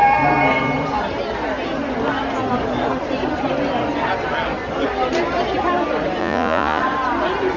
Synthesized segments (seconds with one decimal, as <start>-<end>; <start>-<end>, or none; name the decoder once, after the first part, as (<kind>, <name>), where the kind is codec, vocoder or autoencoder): 6.2-6.8 (vocoder, Vocos)